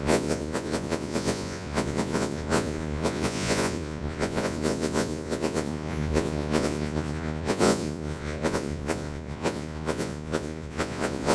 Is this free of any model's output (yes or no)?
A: no